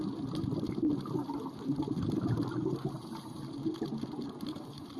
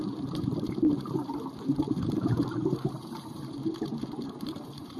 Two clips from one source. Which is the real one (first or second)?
first